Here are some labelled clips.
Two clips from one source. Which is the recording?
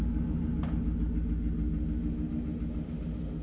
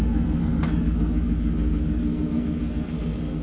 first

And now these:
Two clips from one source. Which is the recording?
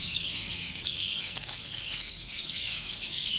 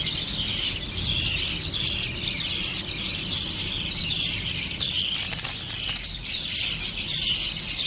second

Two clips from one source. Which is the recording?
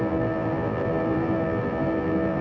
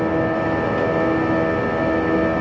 second